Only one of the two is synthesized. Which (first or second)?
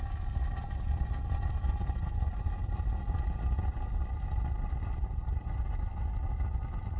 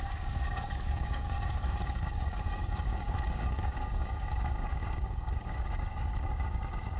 second